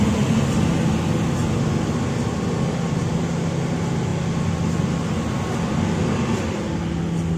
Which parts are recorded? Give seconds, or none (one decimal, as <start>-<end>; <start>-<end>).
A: 0.0-7.4